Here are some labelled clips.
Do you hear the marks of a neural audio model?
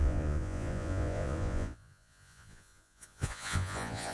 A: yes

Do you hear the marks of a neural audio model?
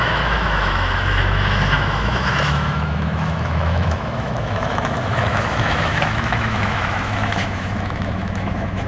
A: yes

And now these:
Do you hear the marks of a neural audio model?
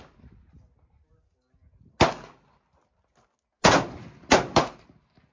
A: no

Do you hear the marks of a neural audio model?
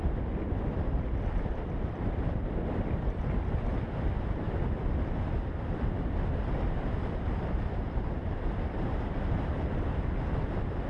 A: yes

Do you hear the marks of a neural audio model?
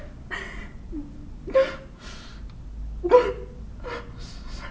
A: no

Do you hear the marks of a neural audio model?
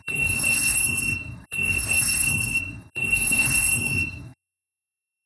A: yes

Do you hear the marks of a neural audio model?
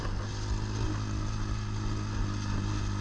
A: no